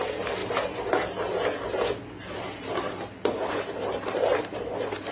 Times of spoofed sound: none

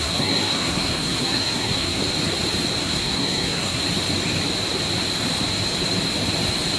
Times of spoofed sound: 0.0-2.0 (codec, SNAC); 2.8-3.8

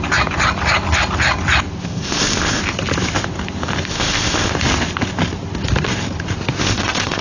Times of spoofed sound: 1.8-2.6 (codec, ZipCodec); 3.9-4.5; 6.6-7.2

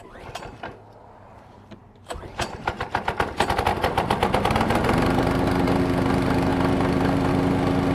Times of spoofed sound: 1.3-2.8 (vocoder, BigVGAN v2)

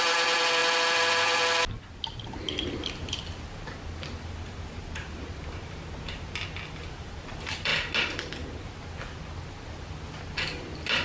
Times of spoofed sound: none